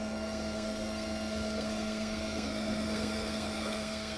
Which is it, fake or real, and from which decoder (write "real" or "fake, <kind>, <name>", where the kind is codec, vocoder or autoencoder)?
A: fake, codec, SNAC